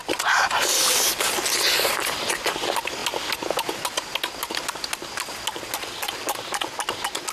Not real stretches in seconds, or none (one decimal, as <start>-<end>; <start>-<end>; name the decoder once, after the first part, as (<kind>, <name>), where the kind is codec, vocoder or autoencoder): none